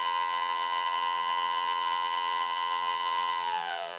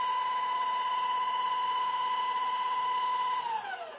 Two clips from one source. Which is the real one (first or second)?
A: second